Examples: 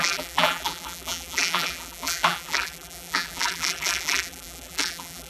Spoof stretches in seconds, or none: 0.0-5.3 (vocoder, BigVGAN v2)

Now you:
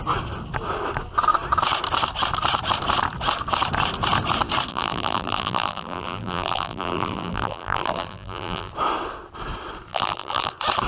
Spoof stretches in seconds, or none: 4.7-8.7 (vocoder, BigVGAN v2); 9.9-10.5

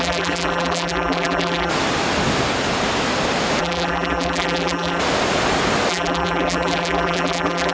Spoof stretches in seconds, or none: 0.0-1.7 (vocoder, BigVGAN v2); 3.6-5.0; 5.9-7.7

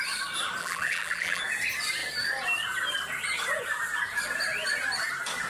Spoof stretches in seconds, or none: 0.6-1.4 (vocoder, BigVGAN v2)

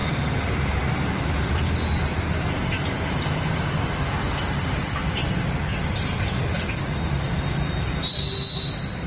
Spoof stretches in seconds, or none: 0.0-1.6 (vocoder, BigVGAN v2); 2.1-3.4

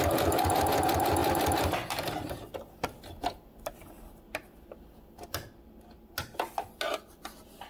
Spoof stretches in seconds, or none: 1.2-5.8 (vocoder, BigVGAN v2)